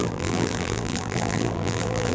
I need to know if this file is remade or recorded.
remade